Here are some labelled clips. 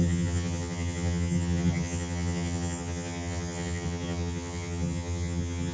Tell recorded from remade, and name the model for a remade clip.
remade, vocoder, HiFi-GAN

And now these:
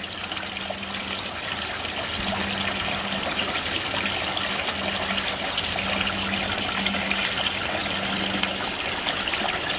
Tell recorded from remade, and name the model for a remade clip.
recorded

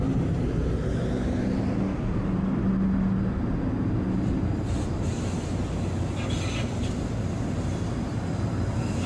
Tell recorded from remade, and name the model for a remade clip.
recorded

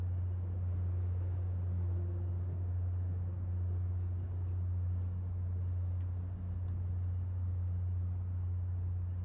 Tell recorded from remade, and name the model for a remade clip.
recorded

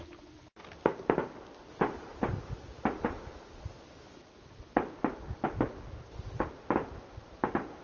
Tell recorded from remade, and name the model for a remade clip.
recorded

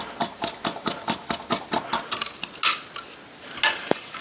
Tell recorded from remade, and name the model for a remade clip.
recorded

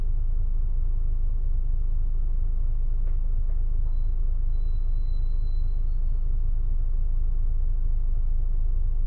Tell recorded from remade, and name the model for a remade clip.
recorded